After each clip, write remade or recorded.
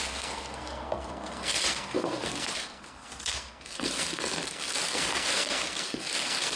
remade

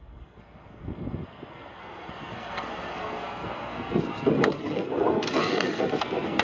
remade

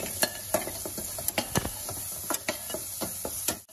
recorded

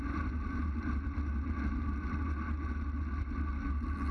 recorded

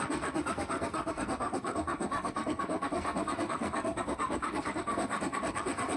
remade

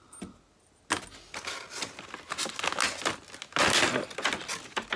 recorded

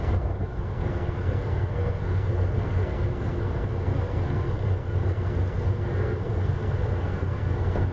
remade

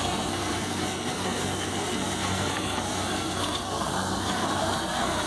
remade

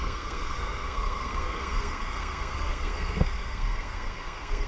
remade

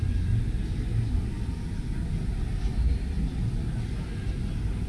recorded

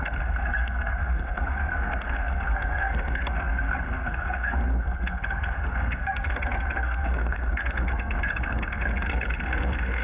remade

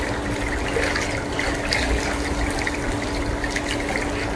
recorded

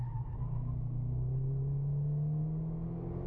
recorded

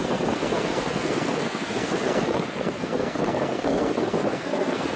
remade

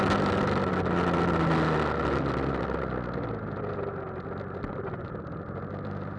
recorded